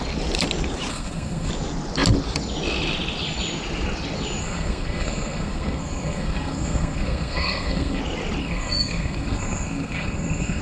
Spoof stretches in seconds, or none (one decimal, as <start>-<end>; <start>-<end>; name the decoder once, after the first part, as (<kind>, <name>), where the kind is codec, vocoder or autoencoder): 0.9-1.5 (codec, SNAC); 4.4-8.0; 8.4-10.6